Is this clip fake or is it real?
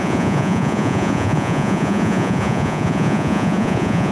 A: fake